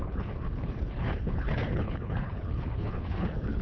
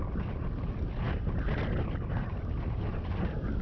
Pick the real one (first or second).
second